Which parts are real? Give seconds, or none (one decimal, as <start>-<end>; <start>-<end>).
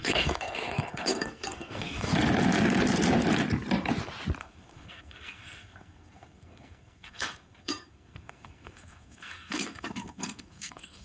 2.1-4.4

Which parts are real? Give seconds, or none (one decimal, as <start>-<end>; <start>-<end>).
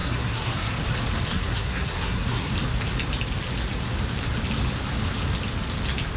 0.7-1.3; 2.5-6.2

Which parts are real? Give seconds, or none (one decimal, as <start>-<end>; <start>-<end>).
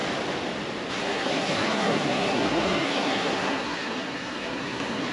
0.0-0.9